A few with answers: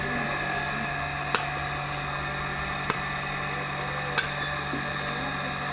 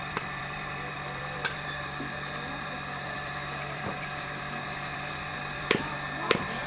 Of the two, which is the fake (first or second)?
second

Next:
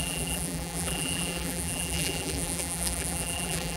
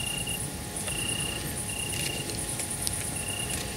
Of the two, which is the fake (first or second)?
first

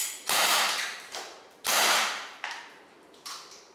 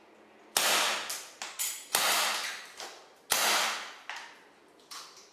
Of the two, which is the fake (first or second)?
first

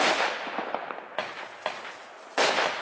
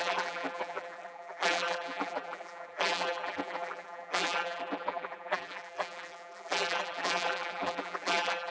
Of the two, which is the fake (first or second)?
second